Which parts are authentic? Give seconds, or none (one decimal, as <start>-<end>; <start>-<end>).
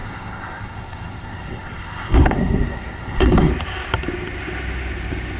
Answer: 3.5-5.4